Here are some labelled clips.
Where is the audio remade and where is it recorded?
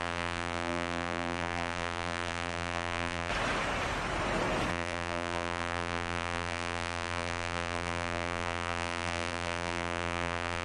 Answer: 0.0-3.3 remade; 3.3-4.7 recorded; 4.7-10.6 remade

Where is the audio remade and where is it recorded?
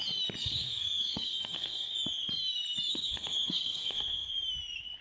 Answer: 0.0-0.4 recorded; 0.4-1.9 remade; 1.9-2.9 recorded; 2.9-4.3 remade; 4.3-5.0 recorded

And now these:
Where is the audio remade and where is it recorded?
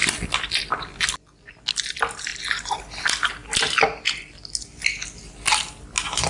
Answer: 0.0-6.3 recorded